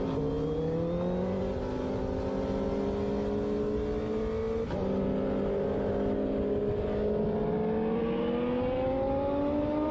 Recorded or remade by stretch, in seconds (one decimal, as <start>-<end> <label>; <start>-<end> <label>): 0.0-9.9 recorded